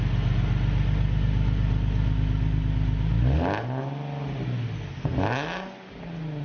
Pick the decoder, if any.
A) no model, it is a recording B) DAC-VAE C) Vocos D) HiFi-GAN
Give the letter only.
A